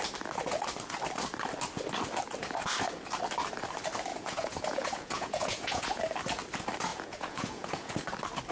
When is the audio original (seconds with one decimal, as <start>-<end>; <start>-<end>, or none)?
0.0-4.1; 6.0-6.9; 7.9-8.5